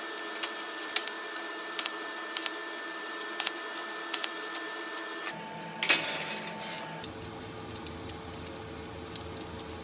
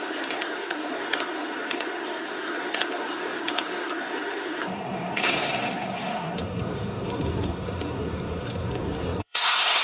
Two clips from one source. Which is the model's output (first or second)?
second